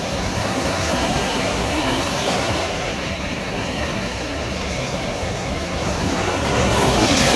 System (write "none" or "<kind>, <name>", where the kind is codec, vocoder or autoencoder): codec, SNAC